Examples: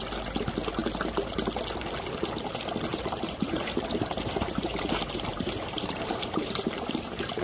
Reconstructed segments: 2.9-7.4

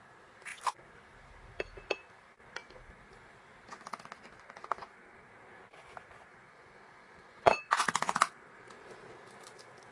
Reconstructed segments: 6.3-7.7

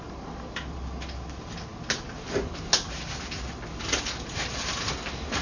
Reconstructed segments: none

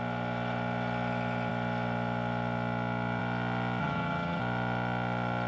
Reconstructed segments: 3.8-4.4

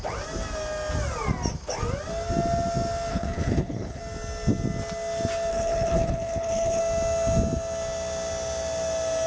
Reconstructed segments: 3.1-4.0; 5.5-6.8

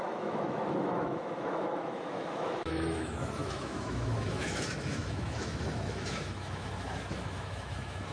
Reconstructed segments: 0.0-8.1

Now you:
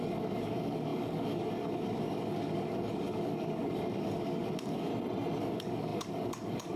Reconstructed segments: 0.0-4.9; 5.4-6.8